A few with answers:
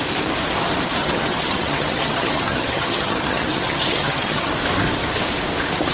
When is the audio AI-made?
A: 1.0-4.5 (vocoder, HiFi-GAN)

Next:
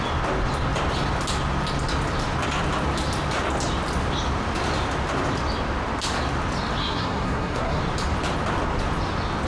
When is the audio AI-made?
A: 6.8-7.8 (codec, SNAC)